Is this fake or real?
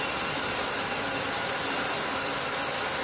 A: fake